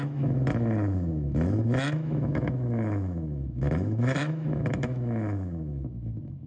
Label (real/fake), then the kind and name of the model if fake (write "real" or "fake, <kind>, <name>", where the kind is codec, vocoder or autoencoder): fake, autoencoder, DAC-VAE